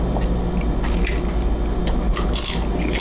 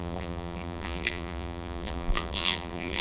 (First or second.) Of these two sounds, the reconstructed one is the second